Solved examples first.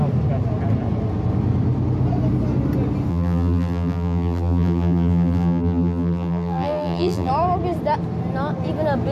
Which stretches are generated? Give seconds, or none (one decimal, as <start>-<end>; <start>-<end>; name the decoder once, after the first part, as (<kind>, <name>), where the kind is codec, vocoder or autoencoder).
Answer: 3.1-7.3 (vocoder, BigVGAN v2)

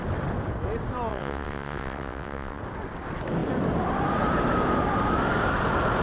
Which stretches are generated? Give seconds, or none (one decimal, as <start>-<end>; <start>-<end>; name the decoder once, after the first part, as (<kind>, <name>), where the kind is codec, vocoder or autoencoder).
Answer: 1.1-2.6 (vocoder, WaveNeXt)

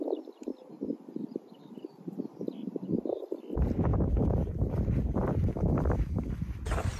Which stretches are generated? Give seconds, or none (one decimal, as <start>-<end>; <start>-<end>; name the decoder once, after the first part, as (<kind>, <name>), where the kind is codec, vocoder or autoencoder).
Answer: 0.0-0.5 (vocoder, BigVGAN v2); 1.1-3.9; 4.7-7.0

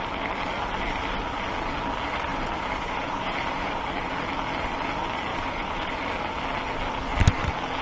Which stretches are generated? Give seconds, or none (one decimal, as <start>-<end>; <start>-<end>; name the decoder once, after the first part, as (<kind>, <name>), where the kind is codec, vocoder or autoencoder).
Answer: 2.3-3.8 (vocoder, BigVGAN v2); 5.3-5.9

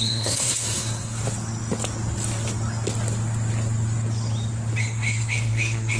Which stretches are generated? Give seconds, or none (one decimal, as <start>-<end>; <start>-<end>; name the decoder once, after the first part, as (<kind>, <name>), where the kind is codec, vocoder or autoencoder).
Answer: 0.0-1.2 (codec, SNAC); 4.8-6.0